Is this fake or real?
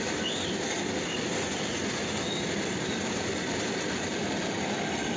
fake